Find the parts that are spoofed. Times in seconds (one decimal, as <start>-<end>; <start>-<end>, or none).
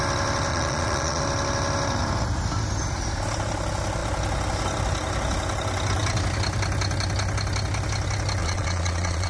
0.5-1.2; 8.4-9.3